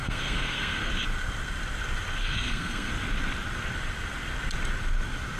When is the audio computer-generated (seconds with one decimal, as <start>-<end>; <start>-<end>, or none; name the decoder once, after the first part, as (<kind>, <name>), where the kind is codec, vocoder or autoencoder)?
0.0-0.9 (codec, SNAC); 2.2-2.9